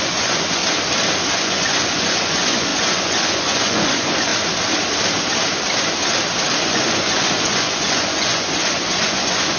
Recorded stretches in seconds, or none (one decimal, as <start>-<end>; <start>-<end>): 0.6-1.3; 4.3-6.6

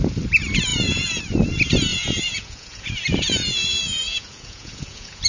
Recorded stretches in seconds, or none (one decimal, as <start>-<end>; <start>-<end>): 0.0-0.7; 1.2-1.9

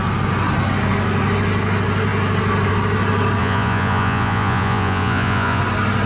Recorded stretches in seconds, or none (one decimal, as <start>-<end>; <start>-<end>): 0.0-3.4; 5.6-6.1

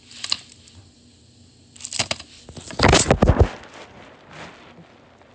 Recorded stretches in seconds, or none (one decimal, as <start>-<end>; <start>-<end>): 0.0-5.3

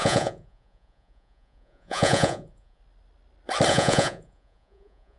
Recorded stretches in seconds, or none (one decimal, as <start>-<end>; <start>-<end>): 2.8-3.7

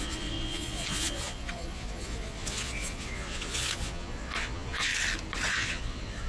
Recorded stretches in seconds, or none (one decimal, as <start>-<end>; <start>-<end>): 4.9-5.5

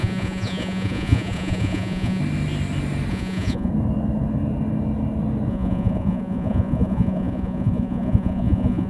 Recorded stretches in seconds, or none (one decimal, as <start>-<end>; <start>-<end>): 2.2-3.1; 3.7-5.5

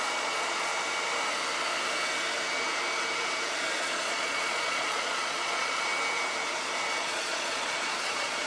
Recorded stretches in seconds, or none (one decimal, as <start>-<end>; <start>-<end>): 0.7-3.8; 5.9-7.0